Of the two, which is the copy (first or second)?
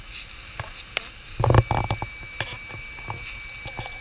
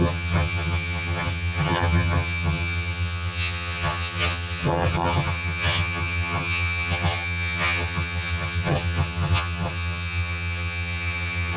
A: second